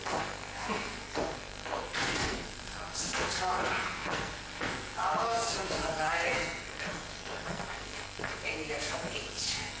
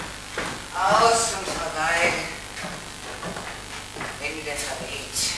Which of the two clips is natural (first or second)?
second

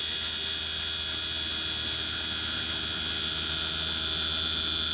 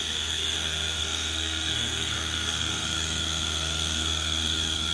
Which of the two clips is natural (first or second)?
first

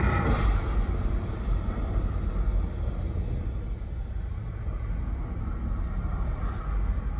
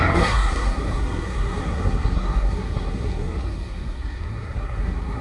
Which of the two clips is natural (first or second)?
first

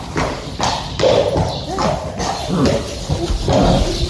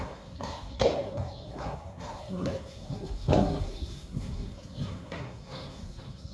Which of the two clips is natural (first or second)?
first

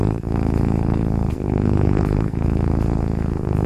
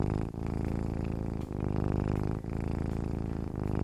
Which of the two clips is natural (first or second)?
second